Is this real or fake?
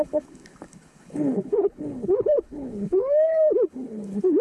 fake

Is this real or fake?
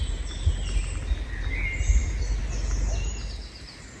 real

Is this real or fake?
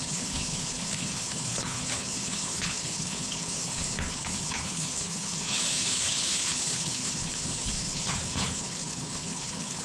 fake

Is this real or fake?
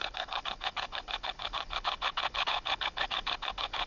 fake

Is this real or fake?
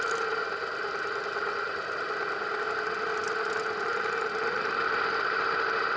real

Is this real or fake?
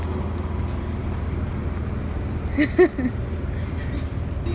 real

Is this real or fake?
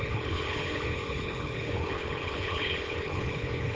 fake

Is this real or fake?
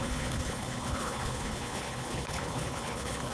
fake